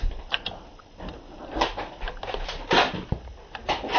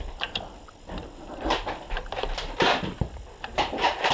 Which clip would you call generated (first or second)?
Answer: second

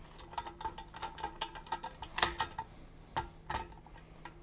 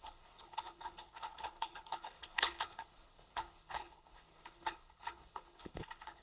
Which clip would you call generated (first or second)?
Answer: second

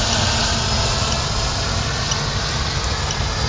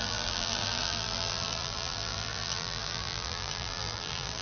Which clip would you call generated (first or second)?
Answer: second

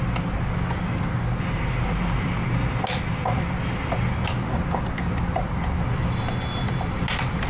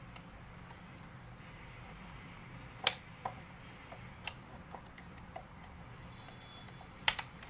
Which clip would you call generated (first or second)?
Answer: second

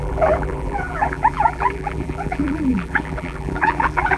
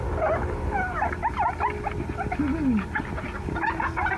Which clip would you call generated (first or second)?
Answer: first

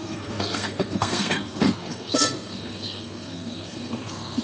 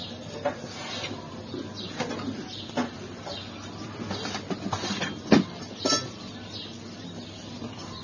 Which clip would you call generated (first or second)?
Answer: first